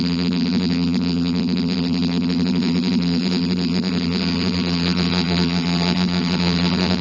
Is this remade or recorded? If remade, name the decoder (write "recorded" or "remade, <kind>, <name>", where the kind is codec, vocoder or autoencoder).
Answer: remade, vocoder, BigVGAN v2